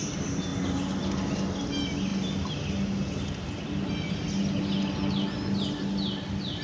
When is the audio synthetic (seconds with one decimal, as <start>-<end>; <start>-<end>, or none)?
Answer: none